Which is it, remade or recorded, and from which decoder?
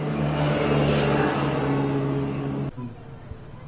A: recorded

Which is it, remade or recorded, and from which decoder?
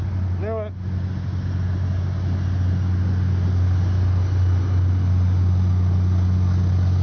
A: recorded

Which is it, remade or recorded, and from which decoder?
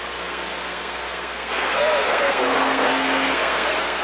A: remade, codec, SNAC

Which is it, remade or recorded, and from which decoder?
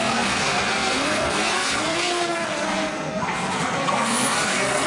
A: remade, codec, SNAC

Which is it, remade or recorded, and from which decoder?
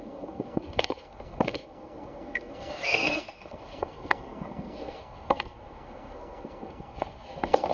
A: remade, codec, SNAC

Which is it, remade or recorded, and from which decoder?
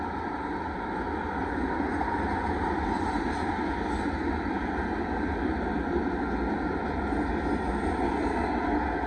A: recorded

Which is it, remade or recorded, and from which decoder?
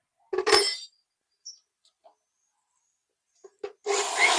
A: recorded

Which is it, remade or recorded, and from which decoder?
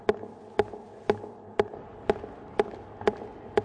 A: recorded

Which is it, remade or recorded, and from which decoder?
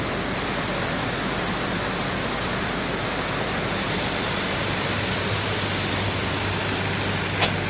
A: recorded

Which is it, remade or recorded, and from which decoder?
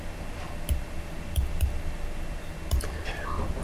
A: recorded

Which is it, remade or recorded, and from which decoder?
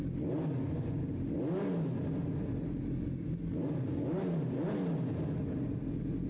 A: recorded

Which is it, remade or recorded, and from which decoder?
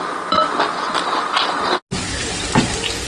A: recorded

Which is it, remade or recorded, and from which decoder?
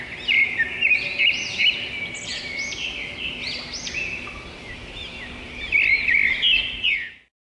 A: recorded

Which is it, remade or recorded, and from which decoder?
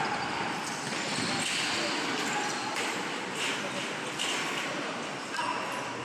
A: recorded